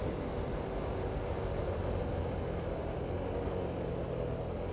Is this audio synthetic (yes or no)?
no